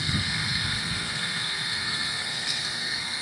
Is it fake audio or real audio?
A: fake